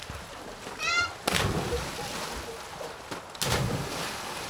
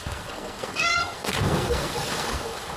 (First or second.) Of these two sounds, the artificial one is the second